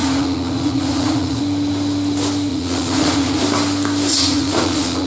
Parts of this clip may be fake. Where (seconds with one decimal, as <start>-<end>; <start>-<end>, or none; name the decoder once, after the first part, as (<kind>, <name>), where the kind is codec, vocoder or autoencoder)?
0.0-1.4 (vocoder, Vocos); 2.5-3.4; 4.1-5.1